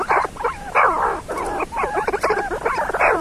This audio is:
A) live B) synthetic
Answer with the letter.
B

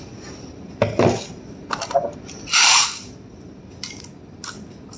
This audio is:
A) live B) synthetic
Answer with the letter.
A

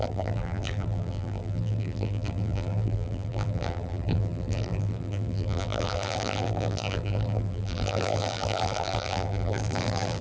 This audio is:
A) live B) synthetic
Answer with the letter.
B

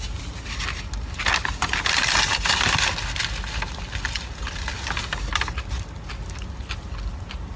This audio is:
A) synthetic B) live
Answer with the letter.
B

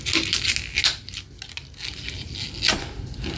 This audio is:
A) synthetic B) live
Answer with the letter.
B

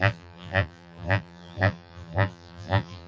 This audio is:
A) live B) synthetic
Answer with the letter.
B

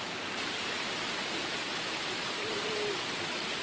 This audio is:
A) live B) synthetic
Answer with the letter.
B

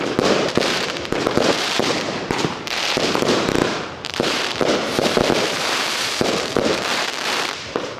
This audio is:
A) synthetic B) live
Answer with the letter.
A